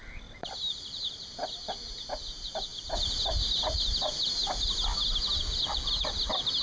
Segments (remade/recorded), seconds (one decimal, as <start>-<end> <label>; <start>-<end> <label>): 0.0-6.6 recorded